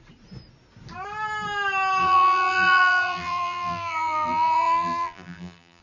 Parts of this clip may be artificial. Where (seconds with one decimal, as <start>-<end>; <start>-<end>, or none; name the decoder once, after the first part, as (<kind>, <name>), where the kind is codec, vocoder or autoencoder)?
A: 2.0-5.8 (vocoder, BigVGAN v2)